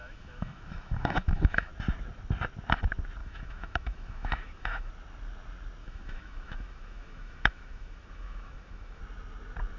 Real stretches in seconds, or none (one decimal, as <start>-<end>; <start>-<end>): 1.7-3.2; 4.9-5.8; 9.0-9.8